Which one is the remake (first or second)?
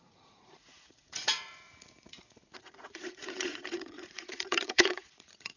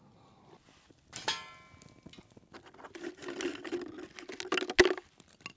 first